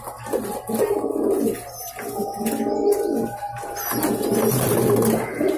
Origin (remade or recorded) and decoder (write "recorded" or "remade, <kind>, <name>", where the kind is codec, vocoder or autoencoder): recorded